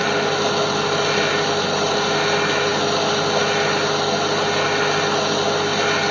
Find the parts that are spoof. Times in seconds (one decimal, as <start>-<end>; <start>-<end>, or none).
none